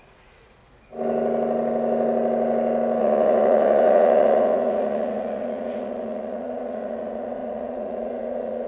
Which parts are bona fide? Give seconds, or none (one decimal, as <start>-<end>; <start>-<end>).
0.6-3.0